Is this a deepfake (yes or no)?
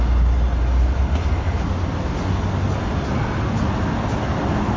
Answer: no